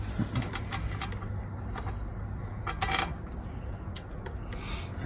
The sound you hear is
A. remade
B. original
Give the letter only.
B